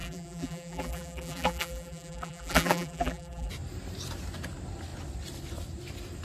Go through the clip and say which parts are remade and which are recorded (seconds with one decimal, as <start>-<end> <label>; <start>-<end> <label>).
0.0-3.5 remade; 3.5-6.2 recorded